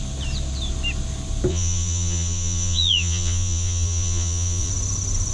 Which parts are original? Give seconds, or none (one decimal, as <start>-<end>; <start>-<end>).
0.0-1.5; 4.7-5.3

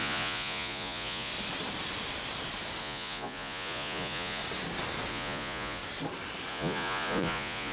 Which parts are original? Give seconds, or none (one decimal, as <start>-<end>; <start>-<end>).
1.3-2.8; 4.4-5.1; 5.8-6.5